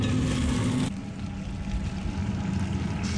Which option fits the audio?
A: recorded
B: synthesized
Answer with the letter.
A